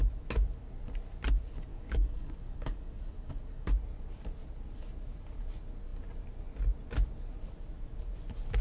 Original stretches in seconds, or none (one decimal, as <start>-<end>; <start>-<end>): 0.0-1.7; 3.7-8.6